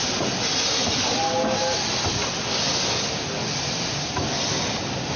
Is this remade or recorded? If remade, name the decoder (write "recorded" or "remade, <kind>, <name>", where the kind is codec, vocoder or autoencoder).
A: recorded